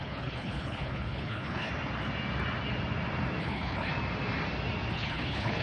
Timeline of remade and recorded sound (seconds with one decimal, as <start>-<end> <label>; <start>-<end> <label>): 0.0-1.7 remade; 1.7-3.4 recorded; 3.4-3.9 remade; 3.9-4.9 recorded; 4.9-5.6 remade